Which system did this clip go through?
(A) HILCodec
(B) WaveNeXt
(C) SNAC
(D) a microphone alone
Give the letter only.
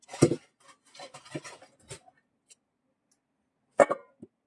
D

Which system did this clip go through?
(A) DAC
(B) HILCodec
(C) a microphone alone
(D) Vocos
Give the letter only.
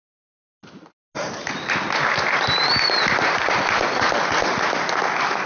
C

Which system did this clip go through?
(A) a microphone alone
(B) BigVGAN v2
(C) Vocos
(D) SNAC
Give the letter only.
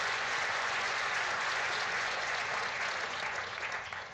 C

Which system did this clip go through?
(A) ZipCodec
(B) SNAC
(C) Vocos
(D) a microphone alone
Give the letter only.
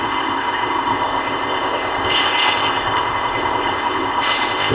A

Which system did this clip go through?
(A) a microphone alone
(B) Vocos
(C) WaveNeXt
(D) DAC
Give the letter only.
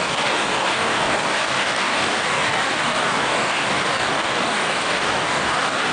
D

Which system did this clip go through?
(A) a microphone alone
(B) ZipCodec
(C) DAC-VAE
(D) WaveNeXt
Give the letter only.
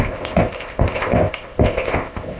B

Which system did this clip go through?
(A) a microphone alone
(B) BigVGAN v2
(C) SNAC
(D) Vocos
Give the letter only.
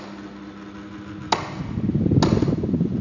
A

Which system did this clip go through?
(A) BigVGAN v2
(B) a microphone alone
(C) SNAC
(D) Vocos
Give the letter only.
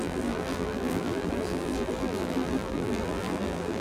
A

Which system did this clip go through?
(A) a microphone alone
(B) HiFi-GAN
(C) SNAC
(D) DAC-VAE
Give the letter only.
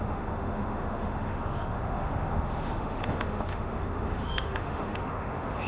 D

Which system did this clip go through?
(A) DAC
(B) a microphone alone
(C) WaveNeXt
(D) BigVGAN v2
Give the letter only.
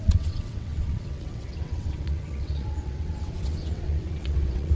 C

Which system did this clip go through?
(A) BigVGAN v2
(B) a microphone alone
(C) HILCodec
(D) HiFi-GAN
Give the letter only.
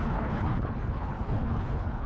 C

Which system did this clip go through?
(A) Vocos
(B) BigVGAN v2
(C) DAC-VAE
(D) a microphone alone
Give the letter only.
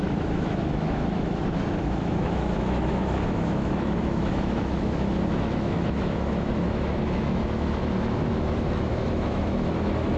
C